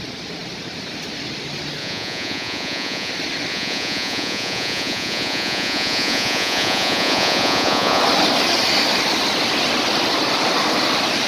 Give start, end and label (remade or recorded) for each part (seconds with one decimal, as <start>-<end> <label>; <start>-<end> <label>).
0.0-1.8 recorded; 1.8-3.1 remade; 3.1-3.5 recorded; 3.5-8.0 remade; 8.0-11.3 recorded